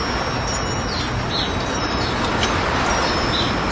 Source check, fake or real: real